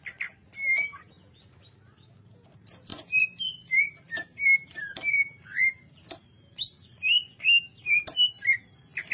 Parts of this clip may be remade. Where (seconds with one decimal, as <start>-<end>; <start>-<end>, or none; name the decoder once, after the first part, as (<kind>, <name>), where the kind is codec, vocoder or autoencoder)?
2.9-6.4 (vocoder, BigVGAN v2)

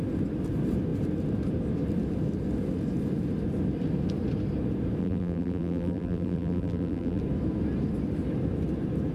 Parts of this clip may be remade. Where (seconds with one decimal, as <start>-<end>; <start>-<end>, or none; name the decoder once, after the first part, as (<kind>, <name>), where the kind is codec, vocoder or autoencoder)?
5.0-7.2 (vocoder, BigVGAN v2)

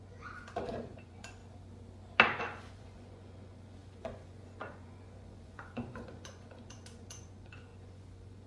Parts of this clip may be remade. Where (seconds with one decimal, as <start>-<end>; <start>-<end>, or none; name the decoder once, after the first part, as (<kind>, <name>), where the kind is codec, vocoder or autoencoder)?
0.0-1.4 (vocoder, Vocos); 2.4-8.5

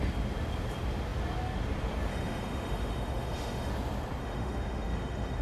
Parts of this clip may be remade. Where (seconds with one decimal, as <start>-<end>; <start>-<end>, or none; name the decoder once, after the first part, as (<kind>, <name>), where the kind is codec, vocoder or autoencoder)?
2.1-3.7 (autoencoder, DAC-VAE); 4.2-5.4

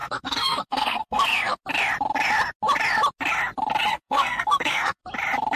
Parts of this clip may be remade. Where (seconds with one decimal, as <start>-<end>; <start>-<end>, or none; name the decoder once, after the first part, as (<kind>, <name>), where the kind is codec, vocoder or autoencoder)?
0.0-1.6 (codec, SNAC); 3.9-5.0